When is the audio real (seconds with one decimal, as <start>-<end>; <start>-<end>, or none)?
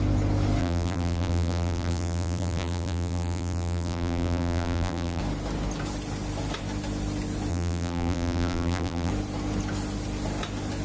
0.0-0.6; 5.2-7.5; 9.1-10.8